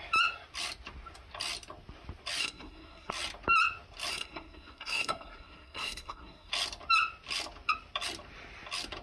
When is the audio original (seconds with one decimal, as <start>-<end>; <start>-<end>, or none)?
0.0-2.4; 3.1-4.1; 6.5-9.0

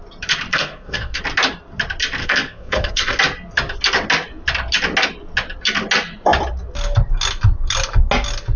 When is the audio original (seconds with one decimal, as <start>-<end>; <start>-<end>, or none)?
0.0-0.5; 1.2-2.2; 3.2-8.6

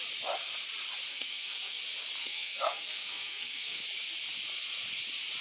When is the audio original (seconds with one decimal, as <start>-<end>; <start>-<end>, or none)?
0.0-1.1; 1.8-2.2; 3.8-5.4

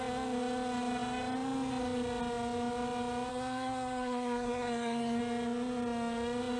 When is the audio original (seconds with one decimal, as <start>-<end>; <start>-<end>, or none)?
0.0-3.3; 5.2-6.6

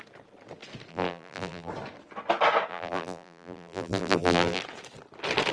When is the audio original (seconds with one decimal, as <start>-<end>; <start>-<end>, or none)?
0.0-0.9; 1.7-2.7; 4.6-5.5

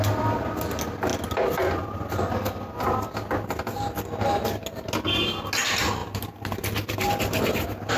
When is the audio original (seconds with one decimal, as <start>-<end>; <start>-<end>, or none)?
0.0-8.0

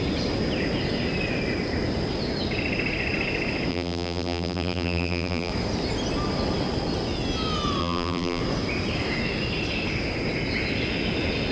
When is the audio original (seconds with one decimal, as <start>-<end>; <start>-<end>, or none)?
0.0-3.7; 5.5-7.8; 8.4-11.5